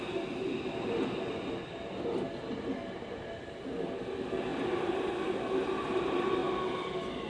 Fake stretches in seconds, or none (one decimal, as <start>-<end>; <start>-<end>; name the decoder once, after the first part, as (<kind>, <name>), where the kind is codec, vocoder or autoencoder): none